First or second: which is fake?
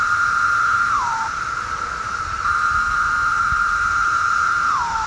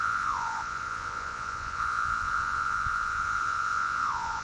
second